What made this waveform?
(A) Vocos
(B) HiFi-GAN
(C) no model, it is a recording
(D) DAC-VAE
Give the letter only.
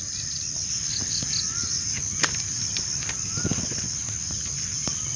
C